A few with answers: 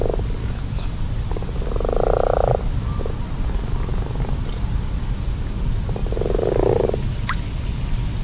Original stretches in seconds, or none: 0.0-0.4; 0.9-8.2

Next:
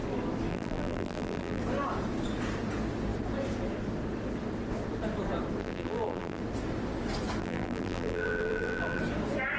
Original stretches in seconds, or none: 0.0-0.5; 1.6-5.6; 6.4-7.4; 9.0-9.6